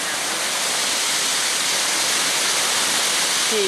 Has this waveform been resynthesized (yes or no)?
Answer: no